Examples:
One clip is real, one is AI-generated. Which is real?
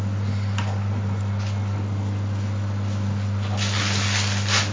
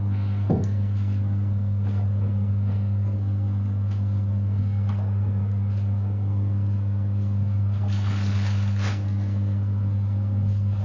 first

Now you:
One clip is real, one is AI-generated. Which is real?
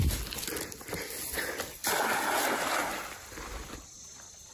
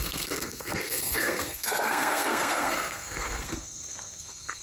first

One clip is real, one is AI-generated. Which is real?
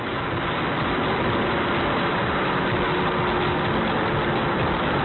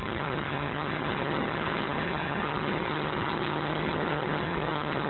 first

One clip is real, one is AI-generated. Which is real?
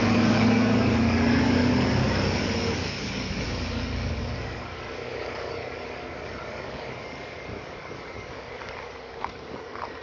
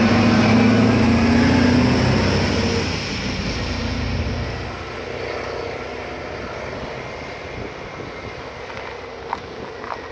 second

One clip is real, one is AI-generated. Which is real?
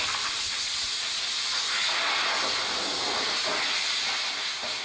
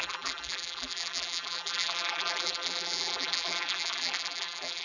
first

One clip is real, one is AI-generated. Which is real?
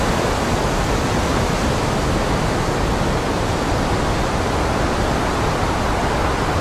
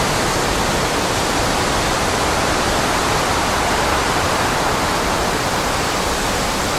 first